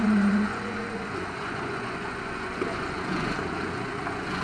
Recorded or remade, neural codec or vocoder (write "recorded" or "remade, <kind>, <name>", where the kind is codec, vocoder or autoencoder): remade, vocoder, Vocos